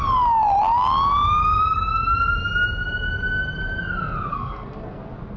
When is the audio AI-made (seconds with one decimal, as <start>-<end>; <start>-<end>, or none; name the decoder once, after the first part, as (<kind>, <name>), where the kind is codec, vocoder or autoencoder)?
4.3-5.0 (codec, SNAC)